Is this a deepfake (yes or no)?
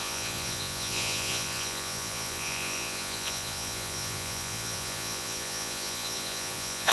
yes